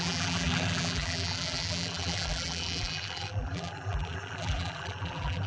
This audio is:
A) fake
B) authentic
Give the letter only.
A